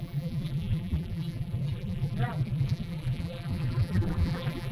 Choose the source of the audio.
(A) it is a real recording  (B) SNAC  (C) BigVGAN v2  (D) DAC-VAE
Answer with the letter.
C